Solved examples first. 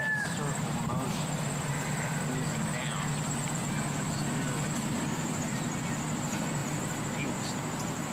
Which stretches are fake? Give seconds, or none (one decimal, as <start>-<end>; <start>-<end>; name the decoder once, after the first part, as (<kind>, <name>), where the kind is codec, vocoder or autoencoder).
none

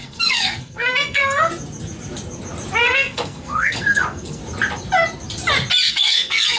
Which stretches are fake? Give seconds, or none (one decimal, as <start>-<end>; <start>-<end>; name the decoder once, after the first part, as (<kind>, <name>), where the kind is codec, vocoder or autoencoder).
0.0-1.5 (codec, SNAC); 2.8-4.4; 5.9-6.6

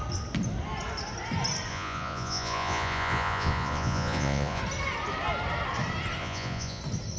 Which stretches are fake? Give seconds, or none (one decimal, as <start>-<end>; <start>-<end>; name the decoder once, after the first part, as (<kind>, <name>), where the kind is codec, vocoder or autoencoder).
1.7-4.6 (vocoder, Vocos); 6.2-6.8

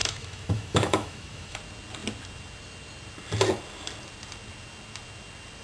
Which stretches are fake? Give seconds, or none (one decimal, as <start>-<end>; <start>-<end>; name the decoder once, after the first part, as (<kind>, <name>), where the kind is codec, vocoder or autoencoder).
0.0-1.6 (autoencoder, DAC-VAE)